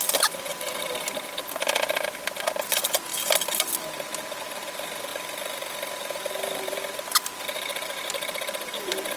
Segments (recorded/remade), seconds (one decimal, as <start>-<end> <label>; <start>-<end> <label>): 0.0-5.1 recorded; 5.1-6.8 remade; 6.8-9.2 recorded